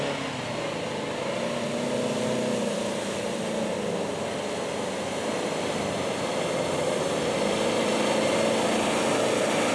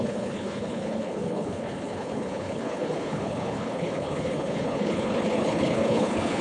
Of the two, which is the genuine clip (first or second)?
first